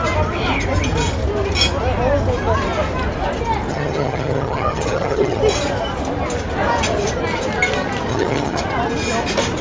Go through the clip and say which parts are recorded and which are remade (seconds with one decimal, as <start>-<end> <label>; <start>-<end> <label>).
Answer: 0.0-3.7 recorded; 3.7-5.4 remade; 5.4-8.1 recorded; 8.1-8.6 remade; 8.6-9.6 recorded